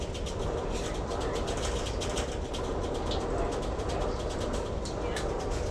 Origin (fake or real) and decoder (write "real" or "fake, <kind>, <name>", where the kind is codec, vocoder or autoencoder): real